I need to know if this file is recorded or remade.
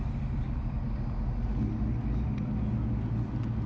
recorded